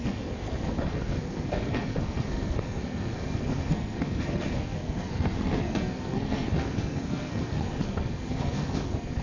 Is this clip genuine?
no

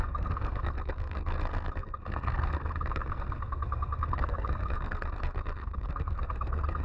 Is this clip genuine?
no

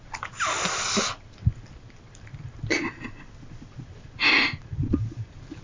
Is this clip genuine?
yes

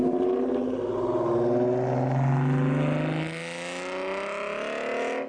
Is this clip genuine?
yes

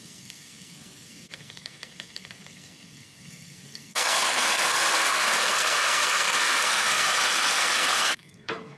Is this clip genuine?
no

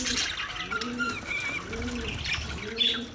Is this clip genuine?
yes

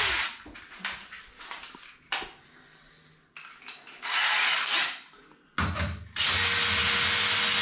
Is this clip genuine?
yes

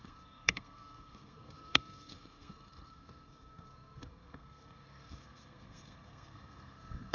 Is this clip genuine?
no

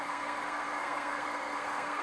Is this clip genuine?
no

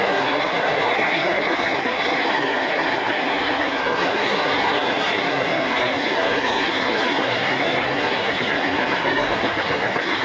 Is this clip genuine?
no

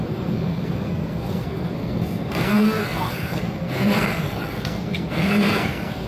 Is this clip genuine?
no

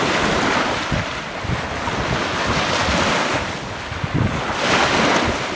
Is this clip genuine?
yes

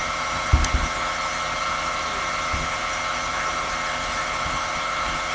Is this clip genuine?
yes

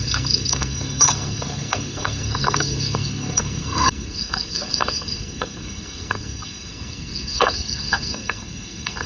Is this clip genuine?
no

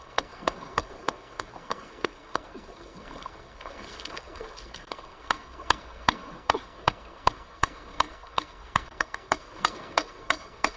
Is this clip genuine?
no